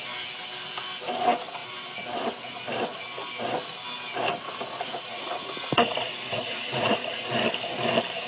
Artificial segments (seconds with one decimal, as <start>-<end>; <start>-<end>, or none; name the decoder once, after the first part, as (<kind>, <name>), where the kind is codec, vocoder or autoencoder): 4.5-7.3 (vocoder, Vocos)